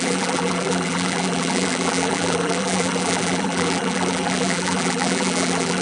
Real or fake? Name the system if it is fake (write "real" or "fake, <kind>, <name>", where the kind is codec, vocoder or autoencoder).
fake, vocoder, BigVGAN v2